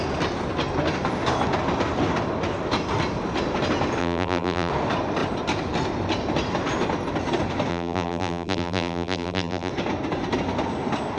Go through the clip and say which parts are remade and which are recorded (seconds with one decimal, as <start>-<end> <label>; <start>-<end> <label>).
0.0-4.0 recorded; 4.0-4.7 remade; 4.7-7.7 recorded; 7.7-9.7 remade; 9.7-11.2 recorded